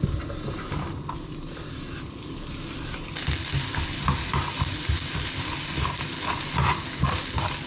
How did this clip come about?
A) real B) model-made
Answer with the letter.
A